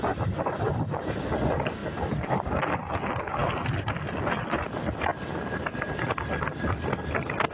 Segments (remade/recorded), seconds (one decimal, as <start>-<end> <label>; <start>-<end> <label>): 0.0-7.5 recorded